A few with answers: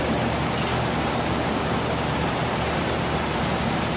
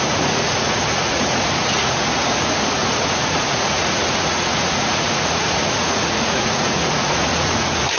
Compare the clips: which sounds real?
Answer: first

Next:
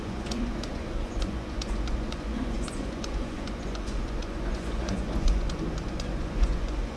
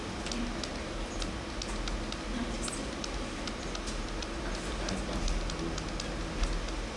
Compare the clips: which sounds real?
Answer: second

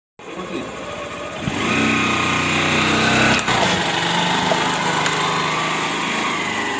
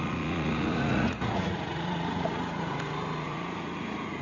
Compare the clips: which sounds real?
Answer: first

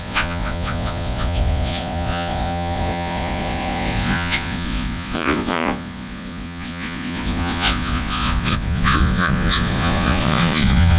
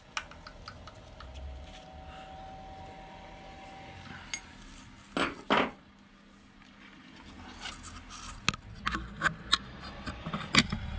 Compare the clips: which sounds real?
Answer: second